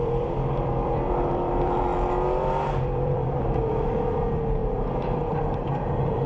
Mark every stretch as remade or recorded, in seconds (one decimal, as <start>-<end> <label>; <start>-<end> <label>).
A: 0.0-4.6 remade; 4.6-5.2 recorded; 5.2-6.3 remade